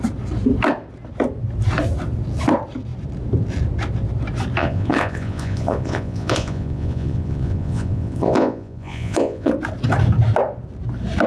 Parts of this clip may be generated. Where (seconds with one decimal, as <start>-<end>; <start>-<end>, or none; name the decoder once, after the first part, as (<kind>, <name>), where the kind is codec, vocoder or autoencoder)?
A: 4.6-9.5 (vocoder, Vocos)